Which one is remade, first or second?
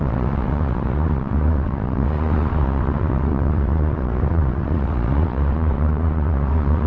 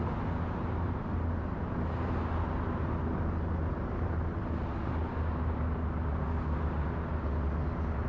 first